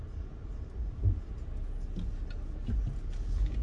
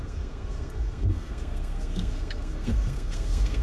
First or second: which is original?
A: first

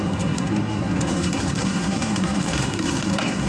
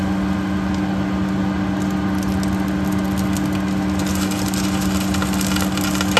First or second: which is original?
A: second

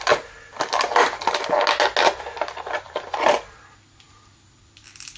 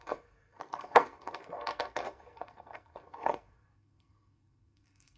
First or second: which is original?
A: first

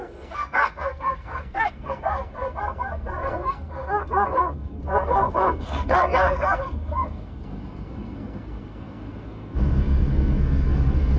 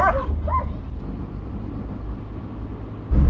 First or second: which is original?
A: second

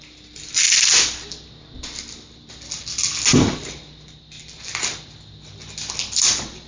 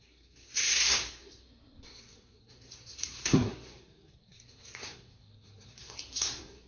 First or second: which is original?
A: first